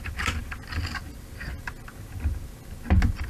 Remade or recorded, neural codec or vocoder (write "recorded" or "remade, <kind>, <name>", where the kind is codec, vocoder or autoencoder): recorded